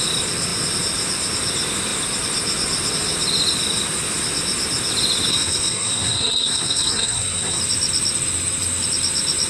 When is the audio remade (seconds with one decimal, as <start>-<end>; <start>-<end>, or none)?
5.3-7.6